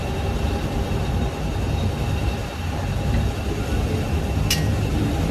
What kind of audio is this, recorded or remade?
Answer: recorded